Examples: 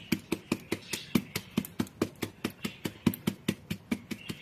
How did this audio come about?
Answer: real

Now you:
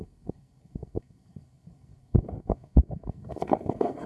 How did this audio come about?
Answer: fake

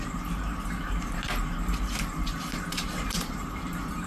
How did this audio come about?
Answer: fake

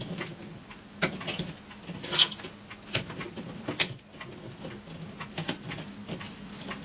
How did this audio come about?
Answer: real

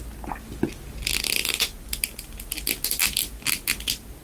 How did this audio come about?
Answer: real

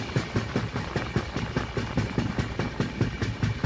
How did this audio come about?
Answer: real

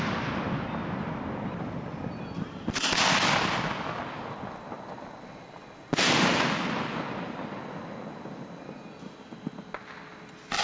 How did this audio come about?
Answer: real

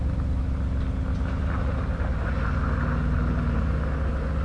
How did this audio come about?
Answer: real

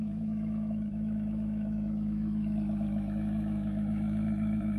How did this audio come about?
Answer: fake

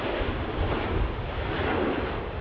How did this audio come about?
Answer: real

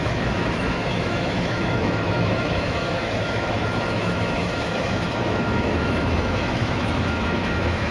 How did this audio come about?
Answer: fake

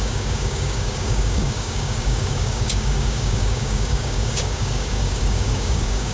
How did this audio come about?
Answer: fake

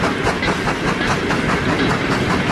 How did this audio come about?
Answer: real